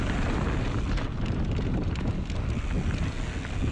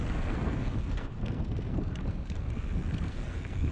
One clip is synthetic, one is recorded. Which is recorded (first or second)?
first